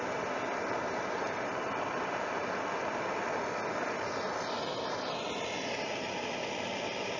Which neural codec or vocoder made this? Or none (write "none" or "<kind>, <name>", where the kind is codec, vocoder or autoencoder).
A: none